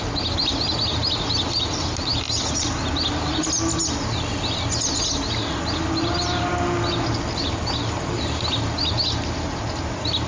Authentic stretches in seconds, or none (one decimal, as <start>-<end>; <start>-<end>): 0.0-10.3